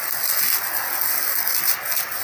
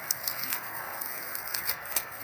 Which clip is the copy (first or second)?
second